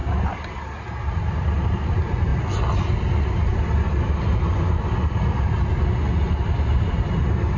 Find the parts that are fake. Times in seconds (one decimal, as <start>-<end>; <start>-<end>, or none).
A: none